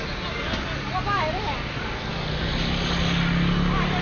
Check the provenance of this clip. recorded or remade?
recorded